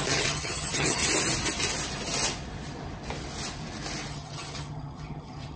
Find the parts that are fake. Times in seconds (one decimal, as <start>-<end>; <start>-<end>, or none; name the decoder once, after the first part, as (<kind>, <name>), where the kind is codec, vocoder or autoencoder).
0.0-1.0 (vocoder, HiFi-GAN); 4.1-5.6